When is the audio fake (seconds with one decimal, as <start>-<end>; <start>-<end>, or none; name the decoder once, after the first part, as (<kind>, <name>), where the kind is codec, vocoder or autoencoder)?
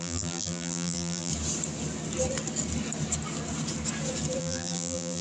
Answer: 0.0-1.3 (vocoder, BigVGAN v2); 4.4-5.2